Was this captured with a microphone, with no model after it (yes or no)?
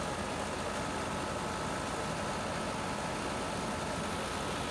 yes